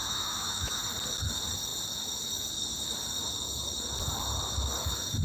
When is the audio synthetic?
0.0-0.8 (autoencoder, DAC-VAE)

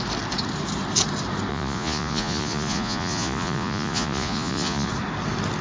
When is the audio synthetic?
1.5-4.9 (vocoder, Vocos)

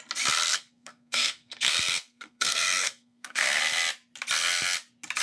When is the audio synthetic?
0.5-3.6 (codec, SNAC)